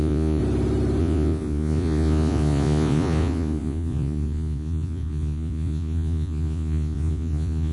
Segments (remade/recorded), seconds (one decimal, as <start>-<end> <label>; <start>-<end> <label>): 0.0-0.4 remade; 0.4-1.0 recorded; 1.0-7.7 remade